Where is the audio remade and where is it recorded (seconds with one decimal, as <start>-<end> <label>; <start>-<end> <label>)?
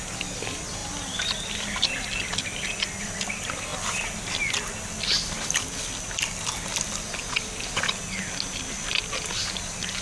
0.0-10.0 recorded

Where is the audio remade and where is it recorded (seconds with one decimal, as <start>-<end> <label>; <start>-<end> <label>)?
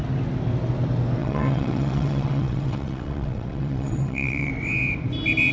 0.0-1.2 recorded; 1.2-4.5 remade; 4.5-5.5 recorded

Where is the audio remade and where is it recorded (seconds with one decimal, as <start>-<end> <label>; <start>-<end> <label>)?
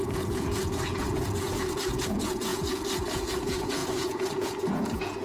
0.0-5.2 remade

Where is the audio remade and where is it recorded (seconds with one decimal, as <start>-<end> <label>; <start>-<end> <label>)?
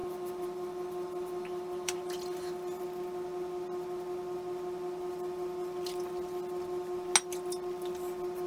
0.0-2.8 remade; 2.8-8.5 recorded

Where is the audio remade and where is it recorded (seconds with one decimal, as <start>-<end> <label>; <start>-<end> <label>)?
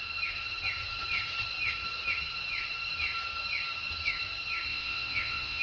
0.0-4.7 recorded; 4.7-5.6 remade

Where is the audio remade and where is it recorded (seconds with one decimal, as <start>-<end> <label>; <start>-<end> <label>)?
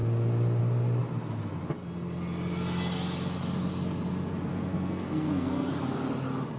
0.0-4.5 recorded; 4.5-5.7 remade; 5.7-6.6 recorded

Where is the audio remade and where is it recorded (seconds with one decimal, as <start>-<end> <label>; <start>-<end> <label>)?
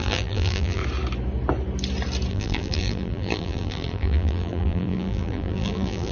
0.0-0.8 remade; 0.8-2.3 recorded; 2.3-6.1 remade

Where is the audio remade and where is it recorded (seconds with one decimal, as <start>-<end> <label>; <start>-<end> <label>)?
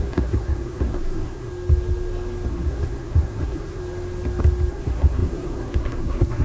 0.0-1.5 remade; 1.5-2.5 recorded; 2.5-3.8 remade; 3.8-4.7 recorded; 4.7-6.4 remade